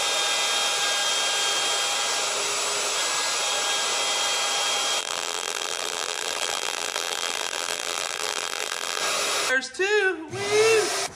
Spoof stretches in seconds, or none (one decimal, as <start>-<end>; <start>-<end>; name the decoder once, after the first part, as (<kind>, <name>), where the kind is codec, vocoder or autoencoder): 5.0-9.0 (vocoder, BigVGAN v2)